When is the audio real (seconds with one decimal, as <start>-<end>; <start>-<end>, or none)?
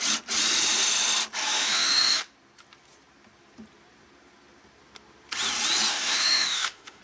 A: 0.0-1.4; 2.2-5.9